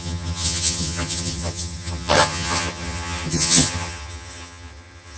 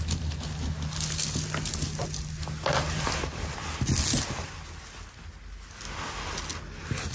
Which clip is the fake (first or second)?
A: first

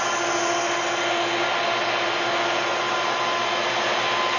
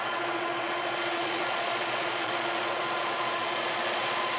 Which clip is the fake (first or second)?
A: second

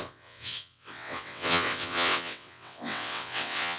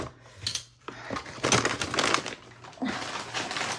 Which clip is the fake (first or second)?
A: first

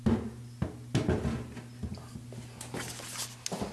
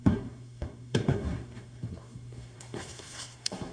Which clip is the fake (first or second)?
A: second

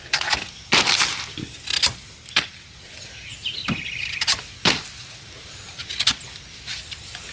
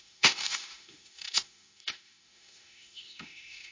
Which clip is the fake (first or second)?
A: second